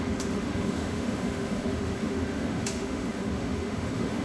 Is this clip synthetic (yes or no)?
yes